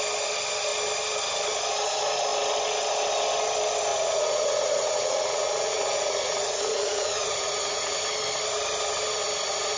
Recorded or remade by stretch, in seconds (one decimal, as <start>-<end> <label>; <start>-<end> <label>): 0.0-3.9 recorded; 3.9-8.0 remade; 8.0-9.8 recorded